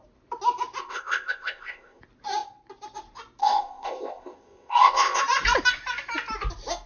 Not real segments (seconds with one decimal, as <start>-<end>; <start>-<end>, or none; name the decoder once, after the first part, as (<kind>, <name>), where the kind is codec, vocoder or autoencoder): 0.8-2.0 (codec, ZipCodec); 3.4-5.2